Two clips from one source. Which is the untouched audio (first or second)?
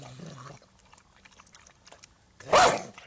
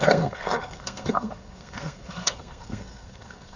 first